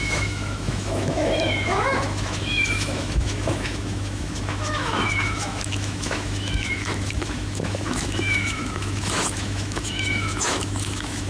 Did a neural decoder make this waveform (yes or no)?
yes